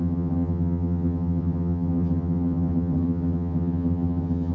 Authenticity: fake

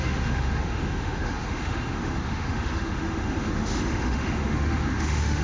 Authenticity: fake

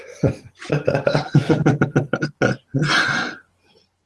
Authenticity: real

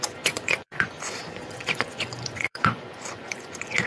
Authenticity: fake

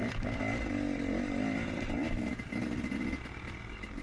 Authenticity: real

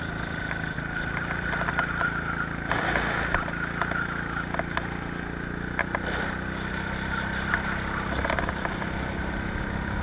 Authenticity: real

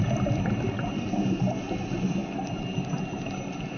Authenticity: real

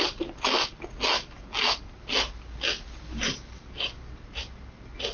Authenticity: real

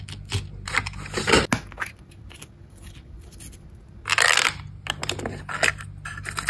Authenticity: real